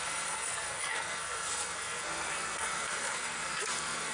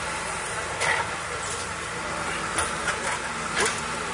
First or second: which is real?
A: second